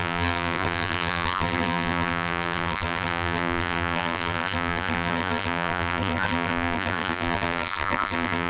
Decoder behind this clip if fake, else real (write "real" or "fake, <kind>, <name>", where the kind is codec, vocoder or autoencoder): fake, vocoder, BigVGAN v2